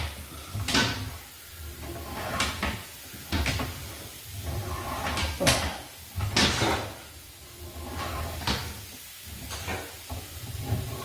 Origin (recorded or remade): recorded